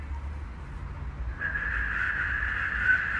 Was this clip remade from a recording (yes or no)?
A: no